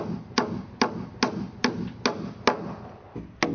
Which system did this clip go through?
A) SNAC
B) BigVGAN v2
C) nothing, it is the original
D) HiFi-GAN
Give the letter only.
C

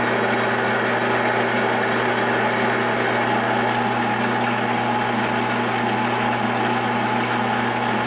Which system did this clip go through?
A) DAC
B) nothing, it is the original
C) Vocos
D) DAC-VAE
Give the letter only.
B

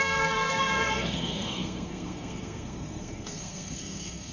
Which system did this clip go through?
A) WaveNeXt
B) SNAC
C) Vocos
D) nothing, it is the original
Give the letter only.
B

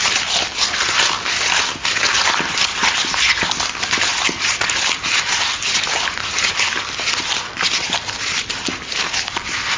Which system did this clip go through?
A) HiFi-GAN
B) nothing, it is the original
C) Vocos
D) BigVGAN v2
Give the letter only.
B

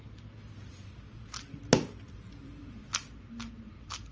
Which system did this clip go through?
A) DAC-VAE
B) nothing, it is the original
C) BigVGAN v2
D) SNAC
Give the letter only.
B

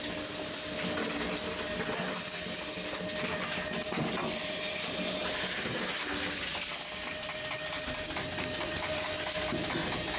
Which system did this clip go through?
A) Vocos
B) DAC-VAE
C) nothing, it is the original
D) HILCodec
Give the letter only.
C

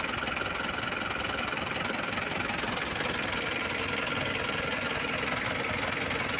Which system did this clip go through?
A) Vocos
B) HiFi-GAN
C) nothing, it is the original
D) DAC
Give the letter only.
C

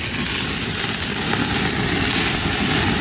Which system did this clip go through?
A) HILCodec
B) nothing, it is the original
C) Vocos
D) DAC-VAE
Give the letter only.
B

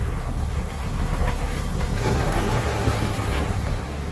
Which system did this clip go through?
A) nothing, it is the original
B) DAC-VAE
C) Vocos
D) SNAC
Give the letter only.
D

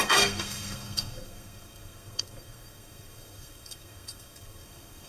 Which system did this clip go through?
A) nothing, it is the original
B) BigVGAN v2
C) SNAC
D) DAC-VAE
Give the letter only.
C